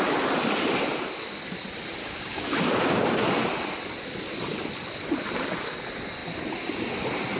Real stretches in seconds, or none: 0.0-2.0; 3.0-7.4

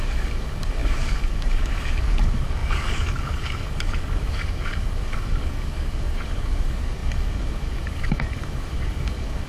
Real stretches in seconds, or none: none

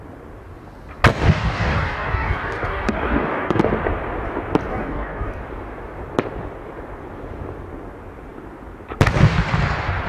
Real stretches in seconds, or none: 0.0-1.1; 3.6-4.7; 5.4-10.1

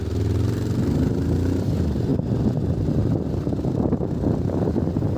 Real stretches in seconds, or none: 0.0-5.2

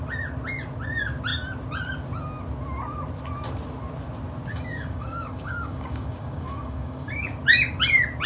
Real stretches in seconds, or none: 0.0-4.5; 7.1-8.3